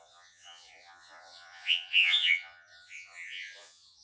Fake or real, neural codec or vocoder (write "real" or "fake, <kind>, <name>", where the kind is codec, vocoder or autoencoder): fake, vocoder, Vocos